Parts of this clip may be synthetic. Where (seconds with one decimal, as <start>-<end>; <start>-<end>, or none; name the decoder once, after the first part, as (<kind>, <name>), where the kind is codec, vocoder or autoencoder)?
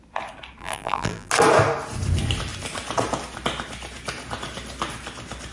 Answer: 0.6-1.3 (vocoder, BigVGAN v2)